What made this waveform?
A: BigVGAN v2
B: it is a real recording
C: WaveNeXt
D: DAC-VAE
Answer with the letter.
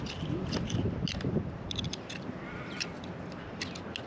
B